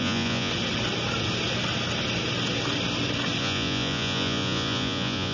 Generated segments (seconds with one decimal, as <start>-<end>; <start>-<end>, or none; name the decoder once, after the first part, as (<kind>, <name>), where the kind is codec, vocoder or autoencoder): 0.0-0.5 (vocoder, Vocos); 3.4-5.3